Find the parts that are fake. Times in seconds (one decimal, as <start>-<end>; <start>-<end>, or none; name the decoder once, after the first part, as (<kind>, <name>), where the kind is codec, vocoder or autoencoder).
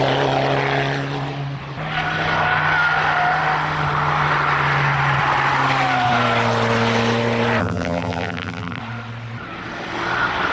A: 7.6-8.8 (vocoder, BigVGAN v2)